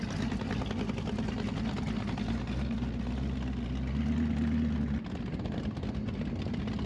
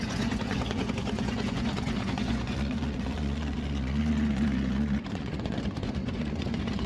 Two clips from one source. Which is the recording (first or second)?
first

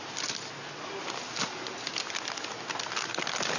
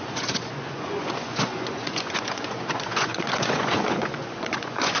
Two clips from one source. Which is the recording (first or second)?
first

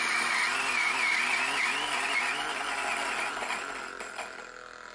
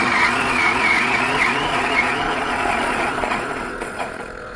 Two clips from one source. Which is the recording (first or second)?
first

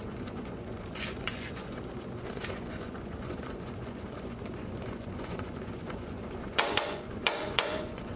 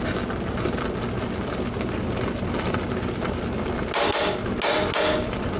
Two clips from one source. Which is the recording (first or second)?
second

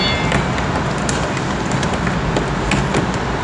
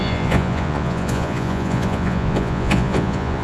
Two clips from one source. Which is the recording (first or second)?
first